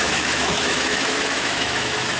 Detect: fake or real fake